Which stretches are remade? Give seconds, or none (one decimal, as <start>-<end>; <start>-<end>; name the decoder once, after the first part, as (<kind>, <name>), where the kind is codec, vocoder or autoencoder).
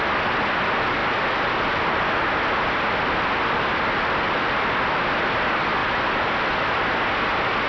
none